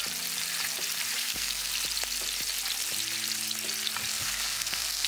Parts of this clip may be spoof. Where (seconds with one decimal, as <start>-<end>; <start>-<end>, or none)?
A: 1.2-1.7; 4.1-5.1